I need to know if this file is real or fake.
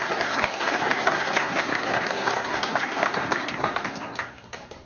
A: fake